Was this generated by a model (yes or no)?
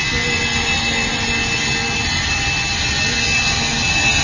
no